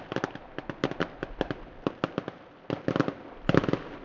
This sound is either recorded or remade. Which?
recorded